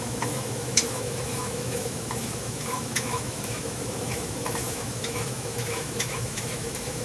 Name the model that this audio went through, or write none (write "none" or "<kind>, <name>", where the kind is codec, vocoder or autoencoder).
autoencoder, DAC-VAE